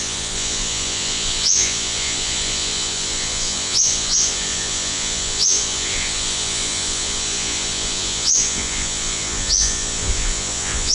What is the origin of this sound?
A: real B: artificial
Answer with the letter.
B